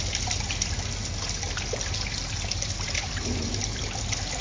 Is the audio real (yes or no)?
yes